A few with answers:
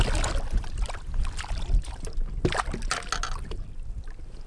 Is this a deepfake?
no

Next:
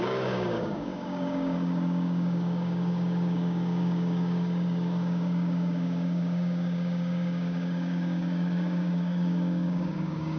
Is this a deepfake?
yes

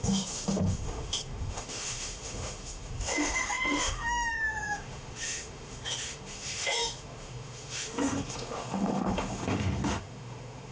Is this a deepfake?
yes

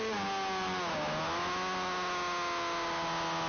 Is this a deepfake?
no